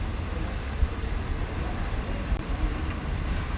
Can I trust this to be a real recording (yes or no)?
yes